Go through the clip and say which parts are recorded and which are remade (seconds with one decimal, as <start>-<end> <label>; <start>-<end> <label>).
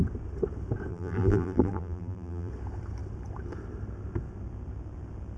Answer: 0.0-0.9 recorded; 0.9-2.5 remade; 2.5-5.4 recorded